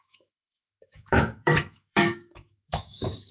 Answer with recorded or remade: remade